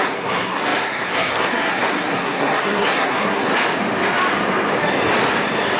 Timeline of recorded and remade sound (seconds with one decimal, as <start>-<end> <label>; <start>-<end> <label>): 0.0-3.5 remade; 3.5-5.8 recorded